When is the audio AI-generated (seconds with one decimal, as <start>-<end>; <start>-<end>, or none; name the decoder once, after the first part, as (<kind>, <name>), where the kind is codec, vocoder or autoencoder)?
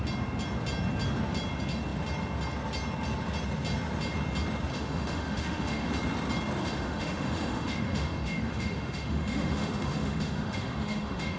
4.7-5.9 (autoencoder, DAC-VAE); 6.6-11.4